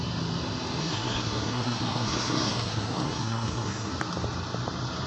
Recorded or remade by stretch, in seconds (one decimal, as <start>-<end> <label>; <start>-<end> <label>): 0.0-0.8 recorded; 0.8-3.9 remade; 3.9-5.1 recorded